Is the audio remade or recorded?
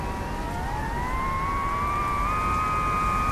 recorded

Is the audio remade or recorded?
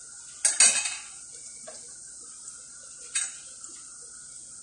recorded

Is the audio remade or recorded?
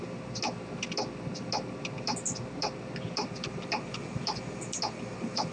recorded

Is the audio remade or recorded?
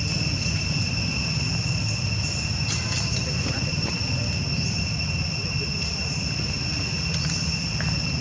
recorded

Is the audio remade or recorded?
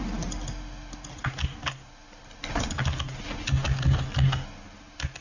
recorded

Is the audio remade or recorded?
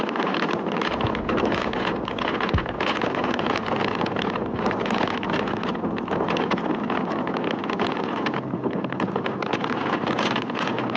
recorded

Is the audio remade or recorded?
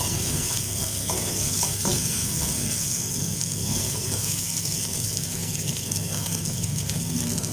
remade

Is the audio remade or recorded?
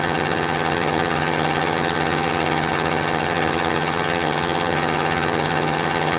remade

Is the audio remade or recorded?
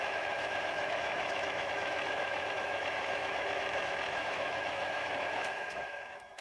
remade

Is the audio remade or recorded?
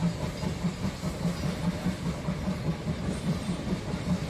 remade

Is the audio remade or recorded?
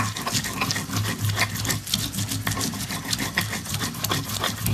recorded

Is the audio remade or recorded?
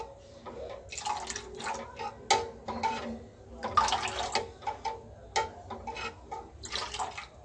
recorded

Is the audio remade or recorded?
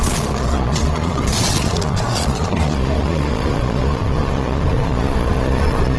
remade